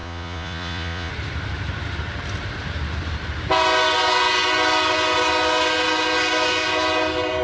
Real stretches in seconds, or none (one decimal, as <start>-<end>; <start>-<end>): 1.1-7.4